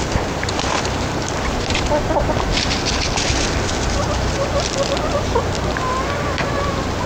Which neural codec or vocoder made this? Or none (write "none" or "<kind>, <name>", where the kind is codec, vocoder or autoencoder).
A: none